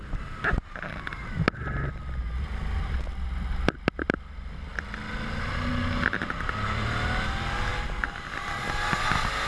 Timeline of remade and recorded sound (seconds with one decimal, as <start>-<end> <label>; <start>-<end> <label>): 0.0-9.5 recorded